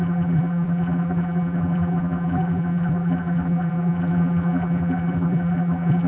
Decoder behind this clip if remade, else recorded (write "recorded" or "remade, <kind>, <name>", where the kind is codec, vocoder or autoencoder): remade, vocoder, BigVGAN v2